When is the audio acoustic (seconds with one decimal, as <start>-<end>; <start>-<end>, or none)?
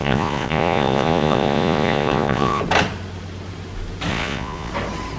2.6-4.1; 4.7-5.2